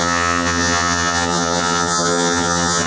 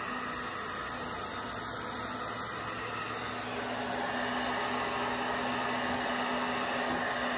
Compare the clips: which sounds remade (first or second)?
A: first